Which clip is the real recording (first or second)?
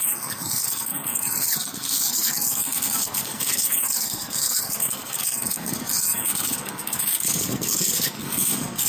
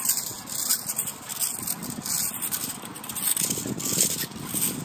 second